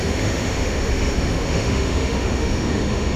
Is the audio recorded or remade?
remade